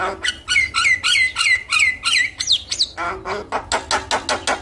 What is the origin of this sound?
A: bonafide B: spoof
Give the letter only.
A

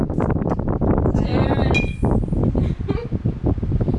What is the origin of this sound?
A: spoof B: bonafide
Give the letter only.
B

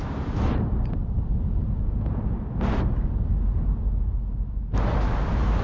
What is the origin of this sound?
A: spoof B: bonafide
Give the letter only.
B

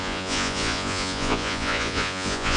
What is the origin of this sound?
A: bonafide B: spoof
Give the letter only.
B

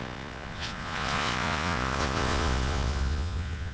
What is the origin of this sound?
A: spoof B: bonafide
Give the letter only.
A